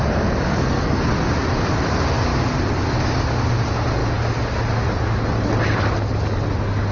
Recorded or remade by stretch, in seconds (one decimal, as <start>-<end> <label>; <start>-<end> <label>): 0.0-0.5 recorded; 0.5-1.0 remade; 1.0-6.9 recorded